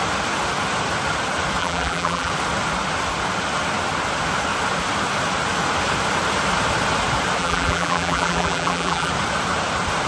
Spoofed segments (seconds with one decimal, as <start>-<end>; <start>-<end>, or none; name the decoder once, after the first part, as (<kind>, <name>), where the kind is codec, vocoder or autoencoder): 1.6-2.3 (vocoder, BigVGAN v2); 7.4-9.1